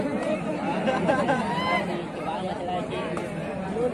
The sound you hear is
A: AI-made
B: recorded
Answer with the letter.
B